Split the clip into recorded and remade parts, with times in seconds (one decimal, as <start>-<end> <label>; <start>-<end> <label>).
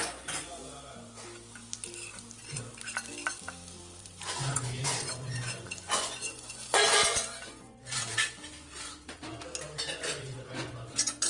0.0-0.6 remade; 0.6-4.0 recorded; 4.0-9.3 remade; 9.3-9.9 recorded; 9.9-11.3 remade